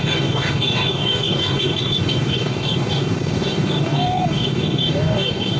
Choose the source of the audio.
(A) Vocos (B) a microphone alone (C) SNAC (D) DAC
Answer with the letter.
D